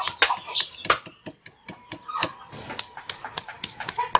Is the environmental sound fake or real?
real